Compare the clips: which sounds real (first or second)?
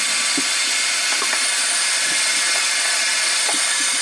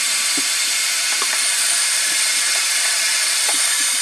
first